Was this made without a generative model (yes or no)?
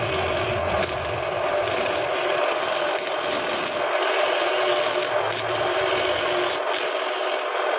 yes